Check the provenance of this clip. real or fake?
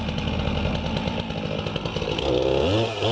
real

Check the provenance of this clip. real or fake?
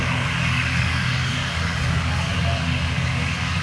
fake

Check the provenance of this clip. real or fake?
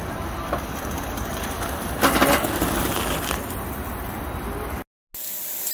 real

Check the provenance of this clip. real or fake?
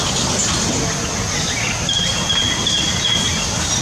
real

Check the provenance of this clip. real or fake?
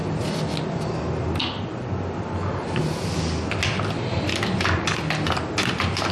real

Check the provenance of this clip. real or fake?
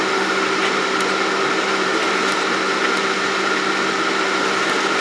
real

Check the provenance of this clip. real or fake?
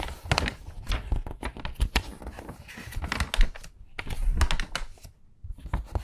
real